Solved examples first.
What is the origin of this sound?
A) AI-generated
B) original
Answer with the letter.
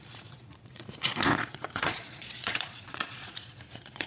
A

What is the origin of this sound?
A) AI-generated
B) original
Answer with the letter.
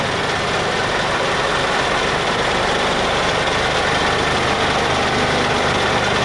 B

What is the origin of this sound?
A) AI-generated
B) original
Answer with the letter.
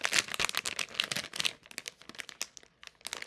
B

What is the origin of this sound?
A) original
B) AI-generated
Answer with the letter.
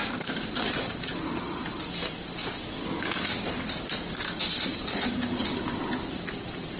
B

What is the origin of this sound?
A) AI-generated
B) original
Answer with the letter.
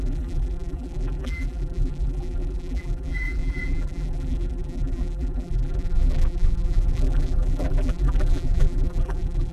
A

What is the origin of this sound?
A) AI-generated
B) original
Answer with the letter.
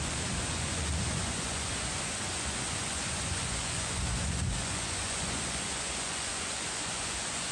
A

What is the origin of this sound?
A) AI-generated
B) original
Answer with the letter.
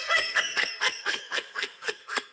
A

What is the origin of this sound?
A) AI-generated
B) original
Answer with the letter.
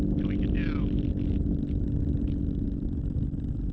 B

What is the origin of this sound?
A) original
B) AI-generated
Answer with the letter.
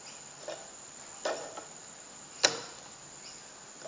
A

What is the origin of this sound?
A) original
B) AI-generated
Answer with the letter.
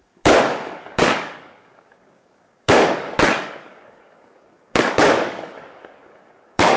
B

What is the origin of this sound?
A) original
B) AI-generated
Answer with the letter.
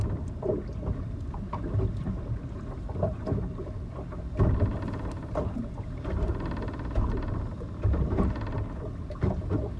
A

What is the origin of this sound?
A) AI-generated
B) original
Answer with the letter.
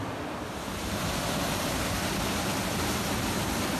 B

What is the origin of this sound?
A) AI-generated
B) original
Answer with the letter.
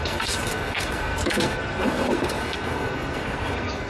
A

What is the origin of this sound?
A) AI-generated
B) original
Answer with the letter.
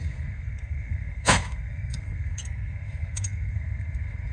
A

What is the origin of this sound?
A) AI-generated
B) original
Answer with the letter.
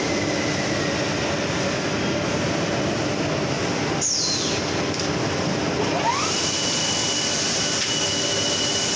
B